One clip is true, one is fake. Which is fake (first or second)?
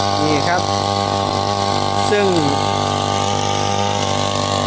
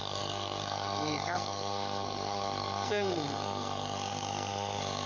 second